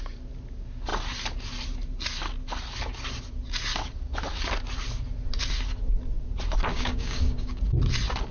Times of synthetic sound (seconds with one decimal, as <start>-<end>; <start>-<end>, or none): 6.7-7.6